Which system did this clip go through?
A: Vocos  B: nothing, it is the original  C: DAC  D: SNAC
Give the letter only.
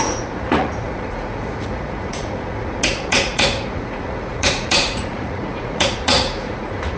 A